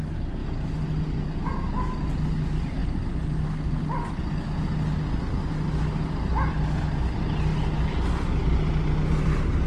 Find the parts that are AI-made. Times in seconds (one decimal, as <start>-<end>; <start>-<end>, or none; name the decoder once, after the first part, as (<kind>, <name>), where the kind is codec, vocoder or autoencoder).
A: none